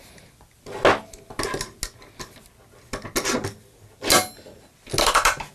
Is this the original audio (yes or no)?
yes